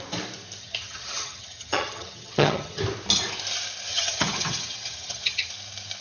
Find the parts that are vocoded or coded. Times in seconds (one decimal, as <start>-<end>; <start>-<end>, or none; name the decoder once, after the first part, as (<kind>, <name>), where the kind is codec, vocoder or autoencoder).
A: 0.6-2.8 (vocoder, HiFi-GAN); 3.9-5.5